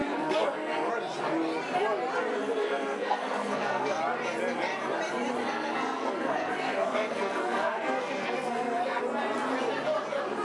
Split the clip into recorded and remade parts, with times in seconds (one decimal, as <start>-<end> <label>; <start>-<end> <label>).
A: 0.0-0.9 remade; 0.9-2.3 recorded; 2.3-4.0 remade; 4.0-5.4 recorded; 5.4-9.0 remade; 9.0-10.4 recorded

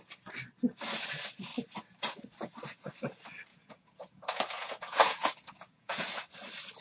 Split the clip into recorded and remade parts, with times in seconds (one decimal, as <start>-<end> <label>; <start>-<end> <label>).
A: 0.0-3.5 recorded; 3.5-6.2 remade; 6.2-6.8 recorded

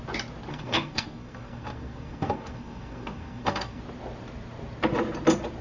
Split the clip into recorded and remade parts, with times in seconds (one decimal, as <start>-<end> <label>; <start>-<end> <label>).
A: 0.0-0.5 recorded; 0.5-3.8 remade; 3.8-5.6 recorded

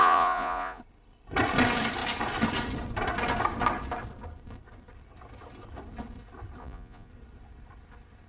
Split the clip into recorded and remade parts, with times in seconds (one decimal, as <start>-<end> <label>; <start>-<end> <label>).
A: 0.0-0.8 remade; 0.8-6.6 recorded; 6.6-7.1 remade; 7.1-8.3 recorded

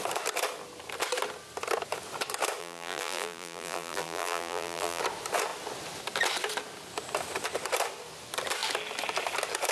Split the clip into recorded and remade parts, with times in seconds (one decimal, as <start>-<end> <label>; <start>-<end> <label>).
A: 0.0-2.6 recorded; 2.6-5.0 remade; 5.0-9.7 recorded

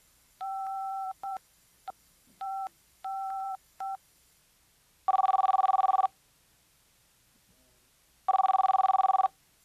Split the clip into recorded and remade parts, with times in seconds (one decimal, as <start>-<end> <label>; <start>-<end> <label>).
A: 0.0-4.4 remade; 4.4-9.6 recorded